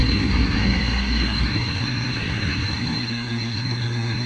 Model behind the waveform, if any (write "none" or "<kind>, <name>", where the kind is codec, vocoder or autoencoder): codec, SNAC